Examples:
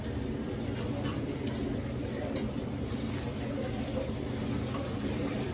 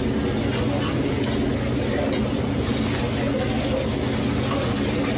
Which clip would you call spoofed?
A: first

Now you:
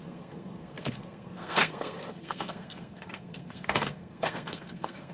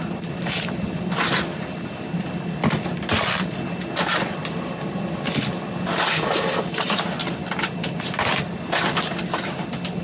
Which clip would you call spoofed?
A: first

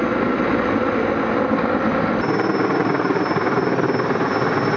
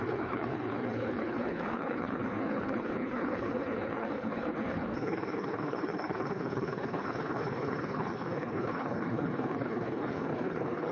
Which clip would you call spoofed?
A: second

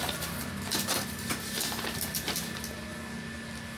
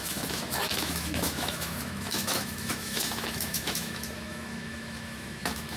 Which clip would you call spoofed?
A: second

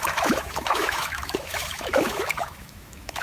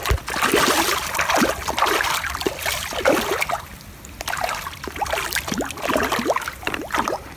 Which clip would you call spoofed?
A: first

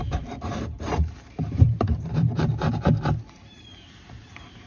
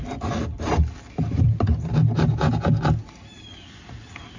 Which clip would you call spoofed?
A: first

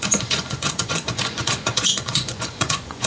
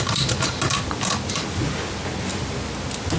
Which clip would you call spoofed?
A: first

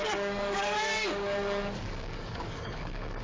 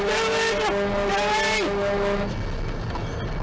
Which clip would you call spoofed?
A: first